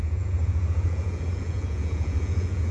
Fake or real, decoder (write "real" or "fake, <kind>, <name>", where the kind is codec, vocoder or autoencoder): fake, vocoder, Vocos